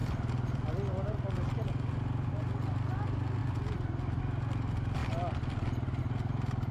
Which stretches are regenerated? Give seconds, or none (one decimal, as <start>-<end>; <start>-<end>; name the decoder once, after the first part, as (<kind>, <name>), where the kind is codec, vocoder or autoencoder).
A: 3.4-4.2 (vocoder, BigVGAN v2)